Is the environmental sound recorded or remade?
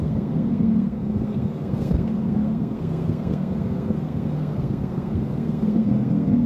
remade